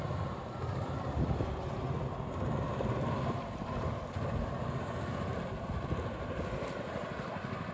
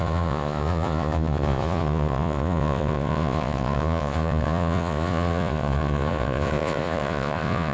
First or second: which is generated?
second